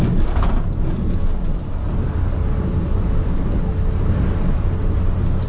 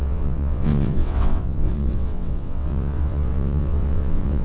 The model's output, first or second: second